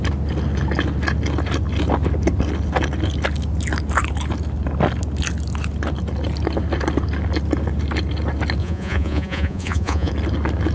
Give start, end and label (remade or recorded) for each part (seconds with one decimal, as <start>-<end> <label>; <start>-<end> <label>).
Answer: 0.0-8.6 recorded; 8.6-10.1 remade; 10.1-10.7 recorded